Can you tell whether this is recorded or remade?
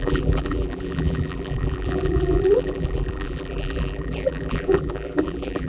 remade